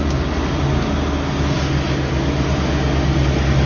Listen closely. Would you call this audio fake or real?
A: real